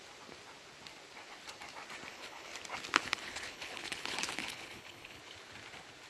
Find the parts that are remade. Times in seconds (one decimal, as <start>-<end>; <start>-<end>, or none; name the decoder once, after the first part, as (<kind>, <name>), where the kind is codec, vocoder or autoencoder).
2.1-2.5 (codec, HILCodec); 3.0-5.2